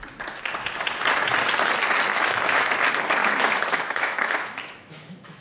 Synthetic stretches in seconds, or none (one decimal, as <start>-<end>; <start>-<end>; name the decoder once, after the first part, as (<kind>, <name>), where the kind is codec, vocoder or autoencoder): 2.1-2.7 (autoencoder, DAC-VAE); 3.2-5.4